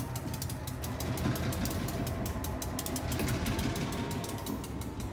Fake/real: real